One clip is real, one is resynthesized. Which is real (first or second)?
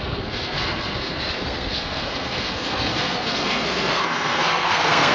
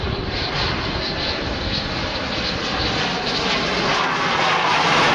second